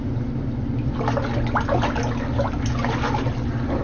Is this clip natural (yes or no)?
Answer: yes